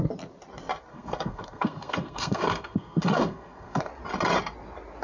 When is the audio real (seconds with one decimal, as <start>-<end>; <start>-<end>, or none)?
0.0-0.9; 3.9-5.0